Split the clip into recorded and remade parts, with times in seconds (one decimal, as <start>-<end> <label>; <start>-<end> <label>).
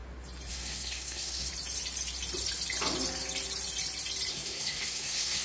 0.0-0.5 recorded; 0.5-1.5 remade; 1.5-4.3 recorded; 4.3-5.4 remade